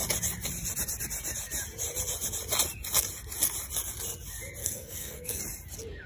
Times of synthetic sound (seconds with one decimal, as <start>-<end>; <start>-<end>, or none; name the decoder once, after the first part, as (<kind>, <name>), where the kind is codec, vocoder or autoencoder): 4.6-5.4 (codec, SNAC)